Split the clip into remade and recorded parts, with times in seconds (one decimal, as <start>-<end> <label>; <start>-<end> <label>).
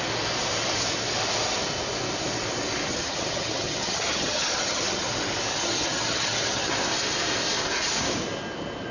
0.0-2.9 recorded; 2.9-5.1 remade; 5.1-5.5 recorded; 5.5-6.7 remade; 6.7-8.9 recorded